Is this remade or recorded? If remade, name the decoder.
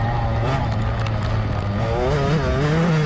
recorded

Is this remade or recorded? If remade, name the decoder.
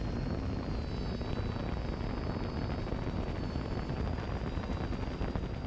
recorded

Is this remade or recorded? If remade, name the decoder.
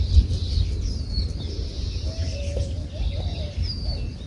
recorded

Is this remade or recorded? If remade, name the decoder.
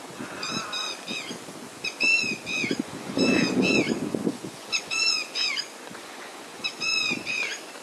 remade, vocoder, Vocos